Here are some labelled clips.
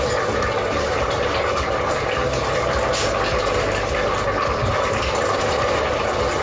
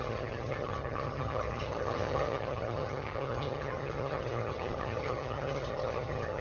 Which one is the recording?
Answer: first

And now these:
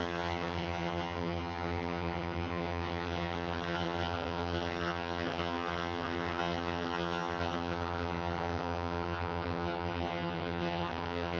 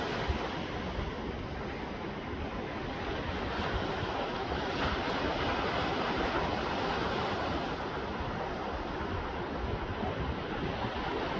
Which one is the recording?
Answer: second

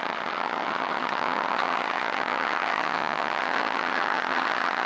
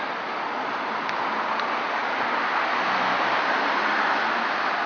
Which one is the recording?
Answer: second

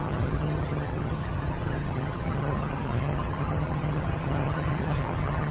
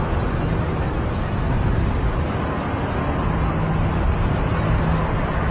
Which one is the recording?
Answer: second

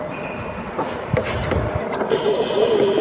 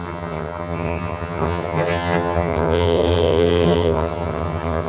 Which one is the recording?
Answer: first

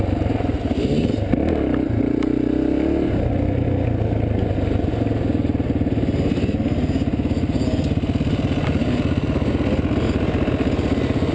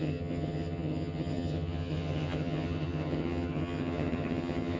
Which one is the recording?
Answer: first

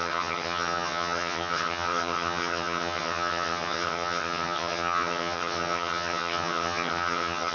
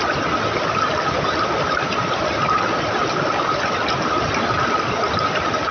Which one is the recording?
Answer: second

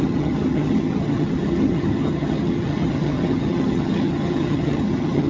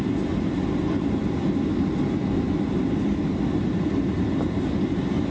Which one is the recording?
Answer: second